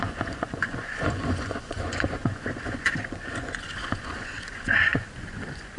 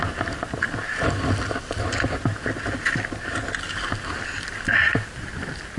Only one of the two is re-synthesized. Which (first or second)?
first